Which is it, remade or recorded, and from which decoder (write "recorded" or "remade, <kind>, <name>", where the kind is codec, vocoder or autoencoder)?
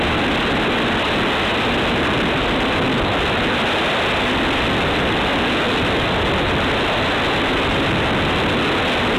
recorded